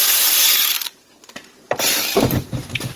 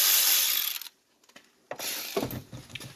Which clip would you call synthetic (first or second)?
first